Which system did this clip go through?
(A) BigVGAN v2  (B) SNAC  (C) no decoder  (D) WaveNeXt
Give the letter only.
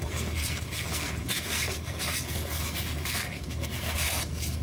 B